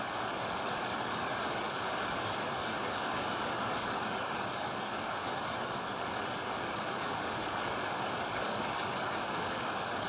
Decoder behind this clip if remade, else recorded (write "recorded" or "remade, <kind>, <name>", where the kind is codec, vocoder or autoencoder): remade, codec, DAC